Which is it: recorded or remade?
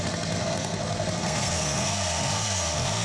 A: remade